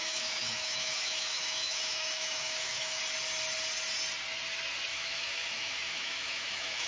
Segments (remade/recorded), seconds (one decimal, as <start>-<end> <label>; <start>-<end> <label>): 0.0-3.0 remade; 3.0-4.9 recorded; 4.9-6.9 remade